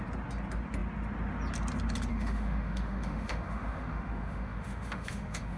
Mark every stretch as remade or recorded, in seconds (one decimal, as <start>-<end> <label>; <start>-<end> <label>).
0.0-2.1 recorded; 2.1-5.6 remade